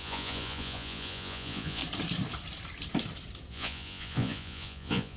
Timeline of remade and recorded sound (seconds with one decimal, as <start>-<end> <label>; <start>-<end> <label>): 0.0-1.8 remade; 1.8-3.5 recorded; 3.5-5.2 remade